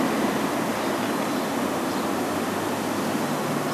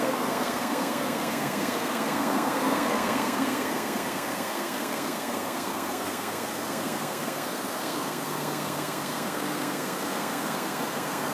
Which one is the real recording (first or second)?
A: first